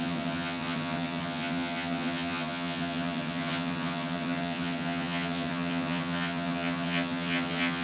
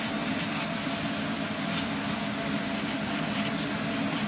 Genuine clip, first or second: second